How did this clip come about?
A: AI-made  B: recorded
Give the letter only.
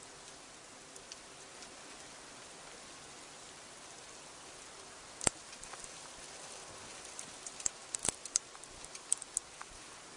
B